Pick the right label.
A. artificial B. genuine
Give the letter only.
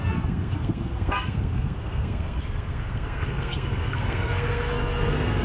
A